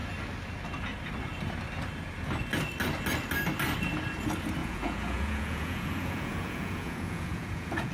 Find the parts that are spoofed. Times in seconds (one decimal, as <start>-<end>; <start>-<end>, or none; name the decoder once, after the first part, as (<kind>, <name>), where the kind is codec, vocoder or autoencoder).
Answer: 4.6-7.9 (vocoder, Vocos)